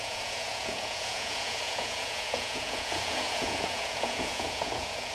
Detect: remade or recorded remade